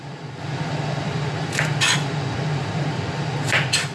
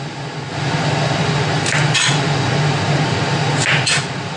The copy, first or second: first